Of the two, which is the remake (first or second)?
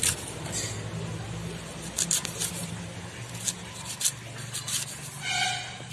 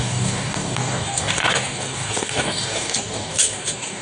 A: second